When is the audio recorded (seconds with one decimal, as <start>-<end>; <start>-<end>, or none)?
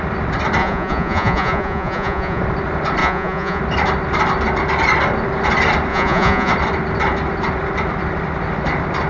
0.0-0.6; 2.4-3.0; 3.6-5.9; 6.5-9.1